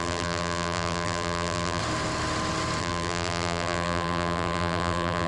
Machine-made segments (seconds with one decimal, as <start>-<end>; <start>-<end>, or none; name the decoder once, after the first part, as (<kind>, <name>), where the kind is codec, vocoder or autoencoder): 0.0-1.8 (vocoder, BigVGAN v2); 2.8-5.3